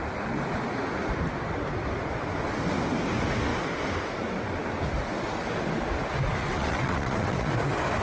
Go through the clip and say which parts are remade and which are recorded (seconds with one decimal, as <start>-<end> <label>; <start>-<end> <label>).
0.0-6.4 recorded; 6.4-7.5 remade; 7.5-8.0 recorded